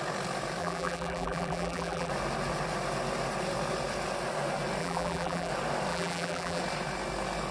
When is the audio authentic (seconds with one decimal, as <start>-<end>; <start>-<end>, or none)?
0.0-0.6; 2.1-4.8; 5.5-5.9; 6.6-7.5